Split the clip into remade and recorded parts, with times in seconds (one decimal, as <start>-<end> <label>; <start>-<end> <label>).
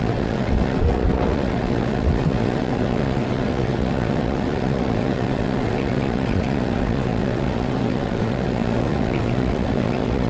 0.0-10.3 remade